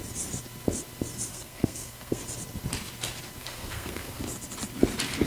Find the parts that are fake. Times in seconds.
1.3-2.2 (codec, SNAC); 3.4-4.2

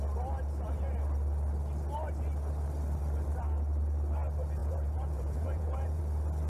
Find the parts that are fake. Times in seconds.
4.6-6.0 (vocoder, Vocos)

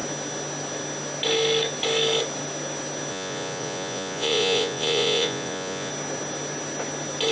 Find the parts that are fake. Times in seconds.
3.1-5.9 (vocoder, Vocos)

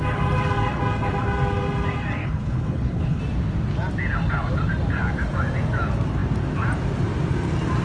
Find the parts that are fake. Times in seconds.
2.2-3.2 (codec, HILCodec)